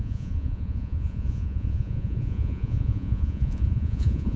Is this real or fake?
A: fake